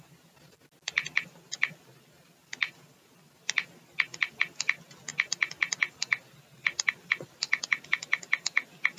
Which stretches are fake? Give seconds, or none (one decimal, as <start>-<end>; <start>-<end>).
none